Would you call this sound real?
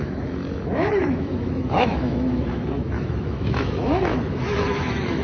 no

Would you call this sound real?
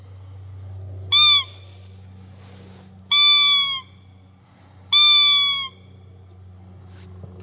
yes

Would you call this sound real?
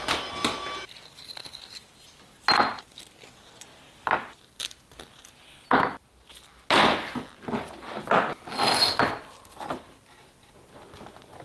yes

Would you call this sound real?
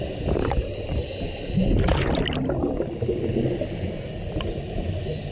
yes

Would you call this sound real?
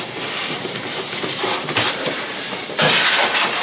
yes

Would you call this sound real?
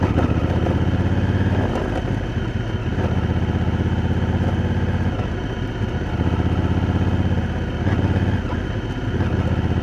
yes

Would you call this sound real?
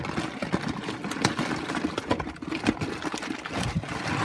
yes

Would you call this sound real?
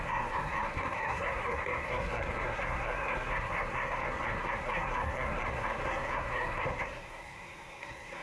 no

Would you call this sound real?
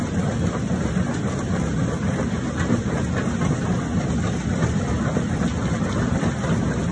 yes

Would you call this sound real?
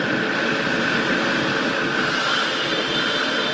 yes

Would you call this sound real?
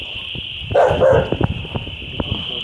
yes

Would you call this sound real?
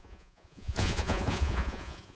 no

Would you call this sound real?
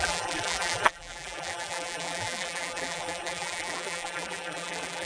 no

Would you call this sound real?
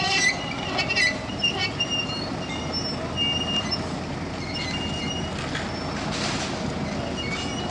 yes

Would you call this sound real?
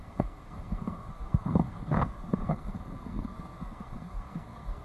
no